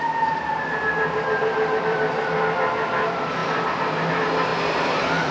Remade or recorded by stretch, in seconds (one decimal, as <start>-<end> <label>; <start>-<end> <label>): 0.0-5.3 remade